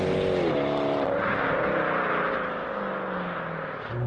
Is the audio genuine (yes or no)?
yes